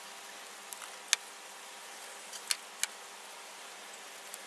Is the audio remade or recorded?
recorded